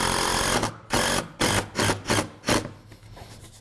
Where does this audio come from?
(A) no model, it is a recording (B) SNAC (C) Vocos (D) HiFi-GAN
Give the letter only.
A